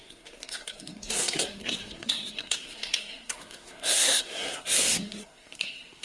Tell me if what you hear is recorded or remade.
remade